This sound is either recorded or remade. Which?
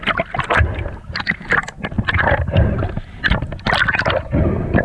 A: remade